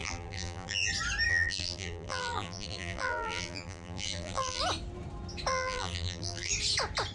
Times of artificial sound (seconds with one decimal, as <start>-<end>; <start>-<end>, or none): 0.0-0.9; 1.3-4.6; 5.5-6.5